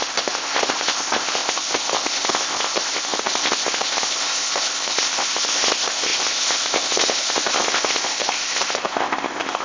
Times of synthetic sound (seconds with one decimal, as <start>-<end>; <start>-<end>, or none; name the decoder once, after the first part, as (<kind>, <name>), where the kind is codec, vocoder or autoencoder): 0.0-9.6 (codec, ZipCodec)